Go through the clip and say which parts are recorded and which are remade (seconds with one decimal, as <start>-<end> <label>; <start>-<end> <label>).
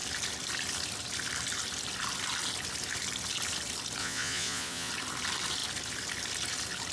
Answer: 0.0-4.0 recorded; 4.0-4.9 remade; 4.9-6.9 recorded